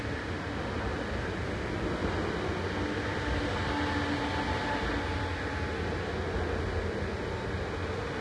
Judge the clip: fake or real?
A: real